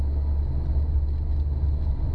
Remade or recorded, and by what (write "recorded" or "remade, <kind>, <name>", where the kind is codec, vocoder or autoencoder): recorded